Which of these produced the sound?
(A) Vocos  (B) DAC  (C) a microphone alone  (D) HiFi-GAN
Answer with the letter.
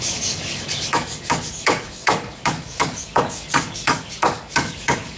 B